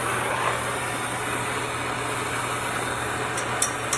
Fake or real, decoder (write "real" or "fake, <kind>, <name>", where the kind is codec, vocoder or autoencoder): real